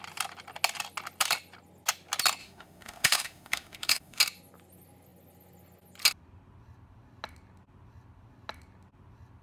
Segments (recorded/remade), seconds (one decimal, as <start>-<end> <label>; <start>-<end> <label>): 0.0-2.4 recorded; 2.4-4.2 remade; 4.2-9.4 recorded